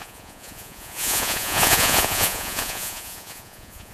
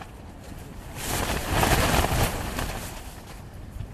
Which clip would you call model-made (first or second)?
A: first